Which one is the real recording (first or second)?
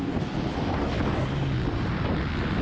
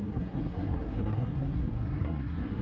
first